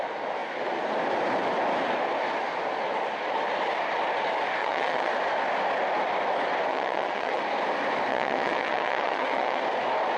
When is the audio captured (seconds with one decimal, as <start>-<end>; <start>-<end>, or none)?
0.0-4.6; 5.1-6.7; 7.4-8.1; 9.6-10.2